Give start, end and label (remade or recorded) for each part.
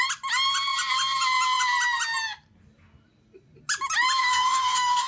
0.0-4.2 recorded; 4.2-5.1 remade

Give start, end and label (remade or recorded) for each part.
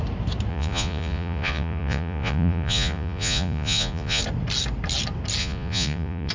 0.0-0.5 recorded; 0.5-4.2 remade; 4.2-5.4 recorded; 5.4-6.3 remade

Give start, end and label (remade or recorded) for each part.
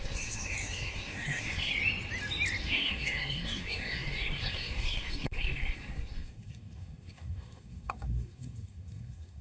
0.0-1.7 remade; 1.7-2.6 recorded; 2.6-9.4 remade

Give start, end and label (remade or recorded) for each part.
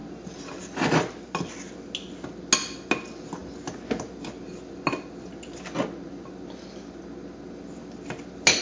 0.0-8.6 recorded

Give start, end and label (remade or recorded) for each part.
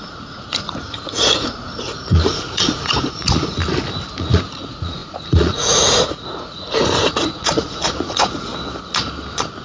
0.0-3.6 remade; 3.6-4.2 recorded; 4.2-8.5 remade; 8.5-9.6 recorded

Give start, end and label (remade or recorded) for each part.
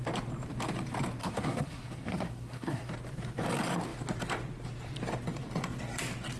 0.0-1.2 recorded; 1.2-2.9 remade; 2.9-6.4 recorded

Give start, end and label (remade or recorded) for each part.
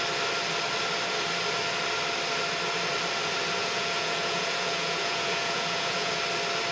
0.0-3.6 recorded; 3.6-6.1 remade; 6.1-6.7 recorded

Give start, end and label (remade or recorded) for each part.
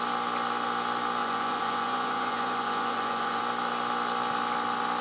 0.0-1.2 recorded; 1.2-3.4 remade; 3.4-5.0 recorded